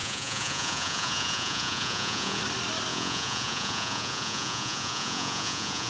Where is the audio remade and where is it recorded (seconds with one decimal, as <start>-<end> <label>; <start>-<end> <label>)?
0.0-2.4 remade; 2.4-2.9 recorded; 2.9-5.9 remade